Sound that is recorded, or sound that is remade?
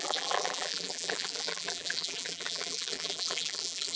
remade